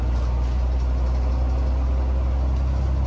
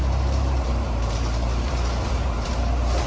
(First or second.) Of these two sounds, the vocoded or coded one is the second